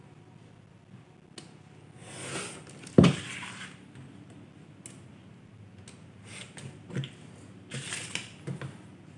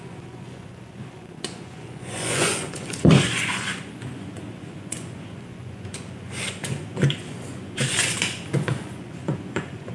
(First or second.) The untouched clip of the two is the first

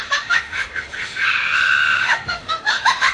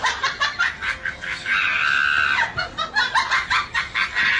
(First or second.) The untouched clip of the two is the second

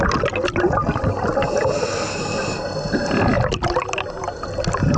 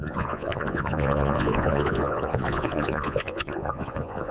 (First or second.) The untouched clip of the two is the first